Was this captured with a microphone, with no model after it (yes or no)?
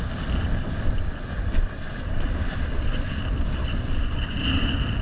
yes